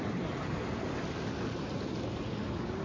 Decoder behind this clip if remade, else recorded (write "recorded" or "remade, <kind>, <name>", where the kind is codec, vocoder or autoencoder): recorded